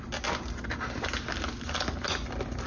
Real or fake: real